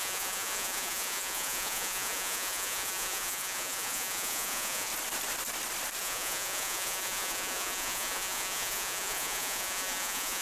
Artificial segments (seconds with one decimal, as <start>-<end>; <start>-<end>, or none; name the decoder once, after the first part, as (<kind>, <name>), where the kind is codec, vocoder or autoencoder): 0.0-4.9 (vocoder, Vocos); 6.0-10.4